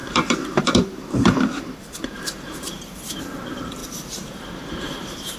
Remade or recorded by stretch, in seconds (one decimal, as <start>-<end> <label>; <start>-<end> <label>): 0.0-3.2 remade; 3.2-3.8 recorded; 3.8-5.4 remade